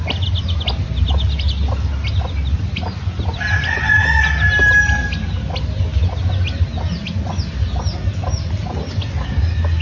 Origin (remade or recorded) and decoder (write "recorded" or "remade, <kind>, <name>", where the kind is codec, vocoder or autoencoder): recorded